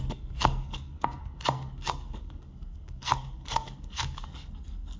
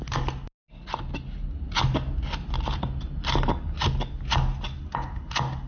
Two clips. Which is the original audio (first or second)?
second